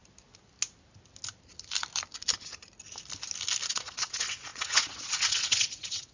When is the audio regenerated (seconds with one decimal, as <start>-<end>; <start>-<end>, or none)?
3.7-6.1